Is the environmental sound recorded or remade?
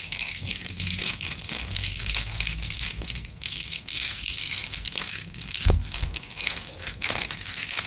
remade